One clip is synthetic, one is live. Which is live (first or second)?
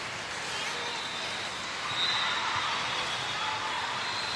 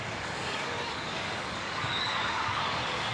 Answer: first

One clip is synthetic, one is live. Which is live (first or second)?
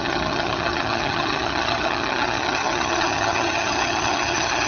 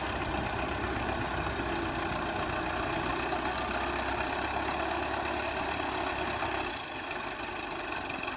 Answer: second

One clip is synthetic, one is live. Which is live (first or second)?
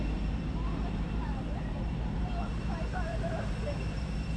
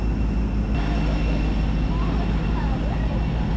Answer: second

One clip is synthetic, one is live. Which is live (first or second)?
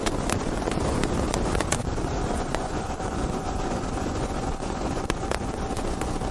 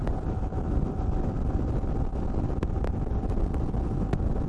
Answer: second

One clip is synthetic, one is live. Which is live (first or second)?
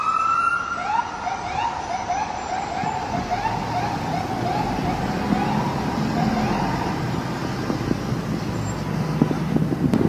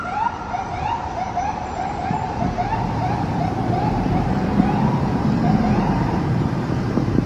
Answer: first